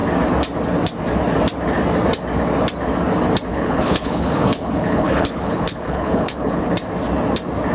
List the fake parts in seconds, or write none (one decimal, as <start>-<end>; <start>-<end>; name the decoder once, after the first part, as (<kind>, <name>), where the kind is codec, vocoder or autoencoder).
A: 3.5-6.7 (codec, HILCodec)